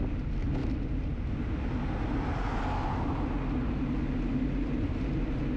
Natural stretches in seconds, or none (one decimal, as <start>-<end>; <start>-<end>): 0.0-5.6